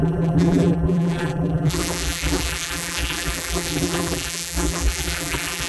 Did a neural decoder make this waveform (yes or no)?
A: yes